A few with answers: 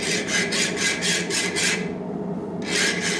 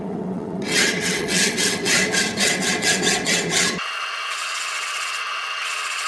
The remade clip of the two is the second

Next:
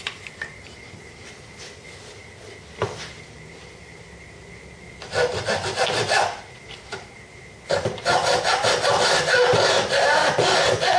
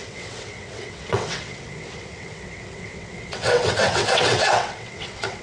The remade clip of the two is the second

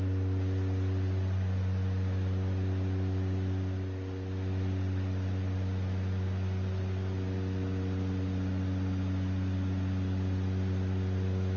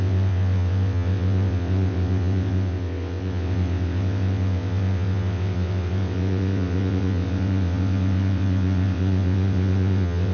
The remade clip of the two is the second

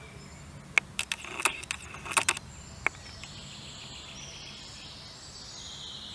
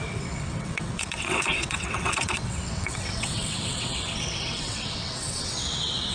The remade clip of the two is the second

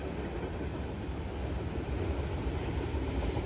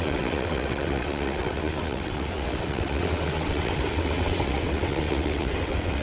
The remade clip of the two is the second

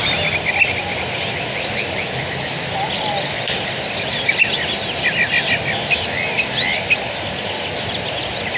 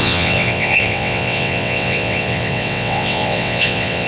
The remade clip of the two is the second